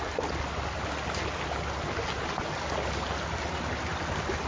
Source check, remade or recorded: recorded